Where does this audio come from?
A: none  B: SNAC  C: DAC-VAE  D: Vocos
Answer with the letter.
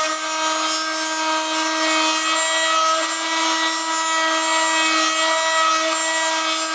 A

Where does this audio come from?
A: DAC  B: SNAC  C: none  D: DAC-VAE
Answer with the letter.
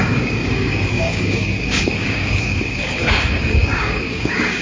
A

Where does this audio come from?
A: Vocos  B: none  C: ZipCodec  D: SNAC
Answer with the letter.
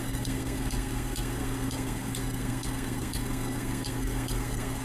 D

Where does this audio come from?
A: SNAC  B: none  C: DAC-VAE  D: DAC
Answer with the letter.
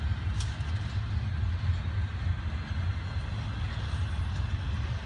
B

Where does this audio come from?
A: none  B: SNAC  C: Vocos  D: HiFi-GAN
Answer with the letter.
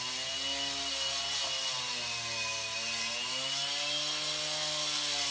A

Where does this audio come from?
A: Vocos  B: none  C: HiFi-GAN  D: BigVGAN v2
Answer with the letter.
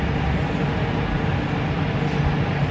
B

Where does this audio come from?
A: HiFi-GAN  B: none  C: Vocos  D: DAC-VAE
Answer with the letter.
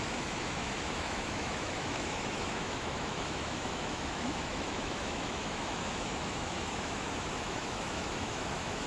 D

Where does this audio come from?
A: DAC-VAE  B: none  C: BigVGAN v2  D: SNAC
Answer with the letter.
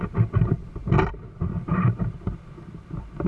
C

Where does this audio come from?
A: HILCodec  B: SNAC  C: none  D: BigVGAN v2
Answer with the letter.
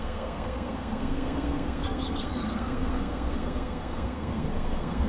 B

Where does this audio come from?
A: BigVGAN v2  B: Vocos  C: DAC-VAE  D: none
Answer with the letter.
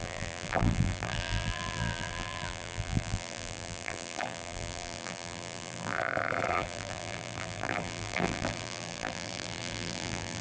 A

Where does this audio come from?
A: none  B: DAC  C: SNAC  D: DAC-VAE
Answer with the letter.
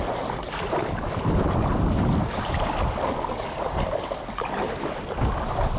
A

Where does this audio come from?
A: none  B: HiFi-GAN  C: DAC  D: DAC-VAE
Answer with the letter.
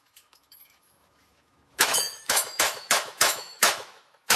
D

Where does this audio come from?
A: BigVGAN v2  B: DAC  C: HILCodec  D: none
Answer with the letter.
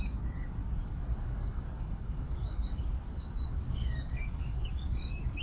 B